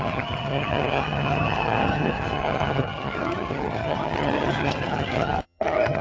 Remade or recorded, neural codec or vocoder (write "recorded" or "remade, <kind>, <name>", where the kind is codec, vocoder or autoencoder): remade, vocoder, HiFi-GAN